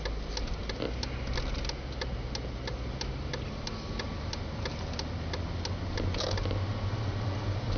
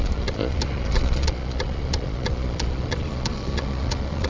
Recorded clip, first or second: first